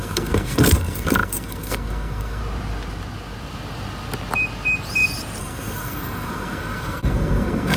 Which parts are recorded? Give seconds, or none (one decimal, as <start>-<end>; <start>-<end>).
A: 2.4-5.4